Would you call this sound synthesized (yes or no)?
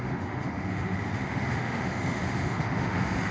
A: yes